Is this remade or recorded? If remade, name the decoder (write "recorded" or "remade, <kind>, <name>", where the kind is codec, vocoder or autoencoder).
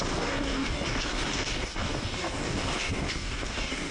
remade, codec, DAC